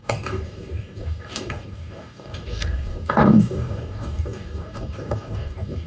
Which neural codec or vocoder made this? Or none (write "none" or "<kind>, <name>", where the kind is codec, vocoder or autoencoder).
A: codec, DAC